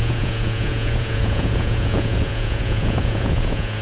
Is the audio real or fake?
fake